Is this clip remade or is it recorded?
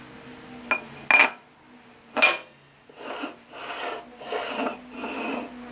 recorded